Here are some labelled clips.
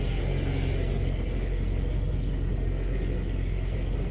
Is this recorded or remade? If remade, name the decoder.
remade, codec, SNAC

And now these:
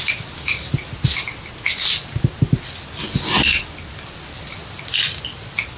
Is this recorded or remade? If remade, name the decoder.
recorded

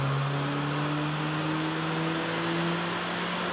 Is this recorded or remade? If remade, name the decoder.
recorded